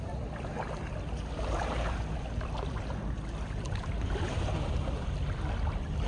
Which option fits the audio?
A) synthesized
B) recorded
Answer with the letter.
B